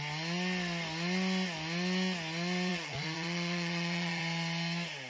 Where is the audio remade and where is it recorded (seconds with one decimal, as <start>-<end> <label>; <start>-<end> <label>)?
0.0-2.7 recorded; 2.7-4.2 remade; 4.2-5.1 recorded